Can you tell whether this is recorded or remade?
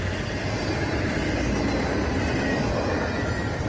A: recorded